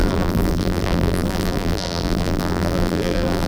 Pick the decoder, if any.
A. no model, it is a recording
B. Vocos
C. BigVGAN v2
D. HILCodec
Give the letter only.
C